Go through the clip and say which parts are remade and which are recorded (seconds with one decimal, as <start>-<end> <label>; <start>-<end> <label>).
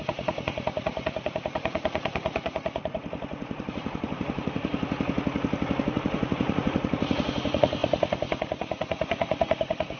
0.0-4.7 remade; 4.7-5.8 recorded; 5.8-10.0 remade